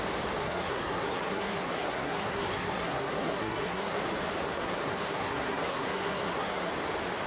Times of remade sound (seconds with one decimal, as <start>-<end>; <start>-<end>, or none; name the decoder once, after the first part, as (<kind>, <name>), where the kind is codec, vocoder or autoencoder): 0.4-4.0 (codec, SNAC); 4.4-6.7